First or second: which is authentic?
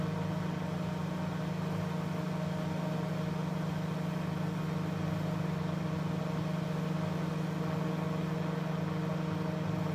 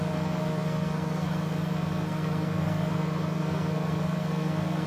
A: first